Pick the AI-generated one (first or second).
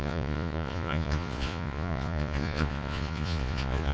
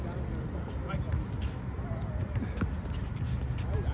first